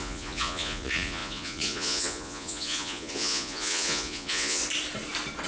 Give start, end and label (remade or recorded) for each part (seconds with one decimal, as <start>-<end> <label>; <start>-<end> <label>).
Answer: 0.0-4.6 remade; 4.6-5.5 recorded